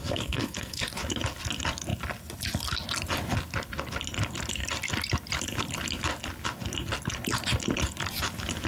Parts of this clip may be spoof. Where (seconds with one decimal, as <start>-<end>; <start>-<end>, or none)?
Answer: 0.0-0.8